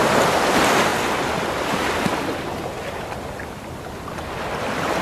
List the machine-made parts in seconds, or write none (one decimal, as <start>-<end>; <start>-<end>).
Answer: none